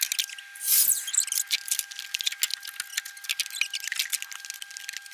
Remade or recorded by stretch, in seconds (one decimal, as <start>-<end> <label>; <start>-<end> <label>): 0.0-5.1 recorded